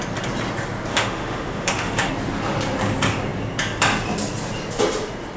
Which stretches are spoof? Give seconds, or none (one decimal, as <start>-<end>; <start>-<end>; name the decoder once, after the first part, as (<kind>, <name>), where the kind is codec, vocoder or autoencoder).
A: 0.9-2.1 (autoencoder, DAC-VAE)